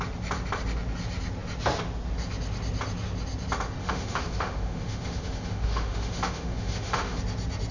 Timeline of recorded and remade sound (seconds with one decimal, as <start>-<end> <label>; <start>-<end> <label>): 0.0-3.8 recorded; 3.8-7.2 remade; 7.2-7.7 recorded